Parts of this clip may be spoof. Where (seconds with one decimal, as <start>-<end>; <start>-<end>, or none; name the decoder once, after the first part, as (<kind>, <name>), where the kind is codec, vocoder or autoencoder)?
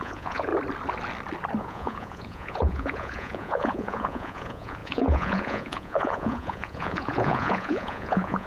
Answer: 0.0-0.5 (vocoder, Vocos); 1.6-8.5